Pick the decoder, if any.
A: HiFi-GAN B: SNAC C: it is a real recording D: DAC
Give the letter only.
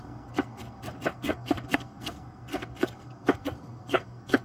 B